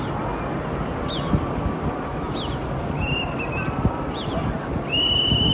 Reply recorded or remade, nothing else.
recorded